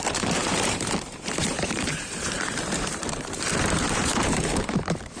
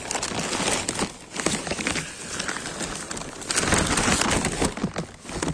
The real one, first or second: second